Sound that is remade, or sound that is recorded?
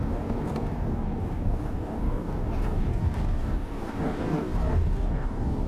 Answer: remade